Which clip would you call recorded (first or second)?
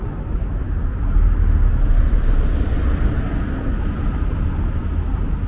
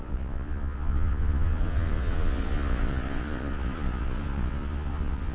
first